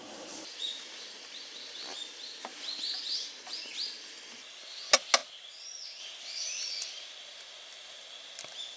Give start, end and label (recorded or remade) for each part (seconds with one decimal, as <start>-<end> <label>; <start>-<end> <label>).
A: 0.0-8.8 recorded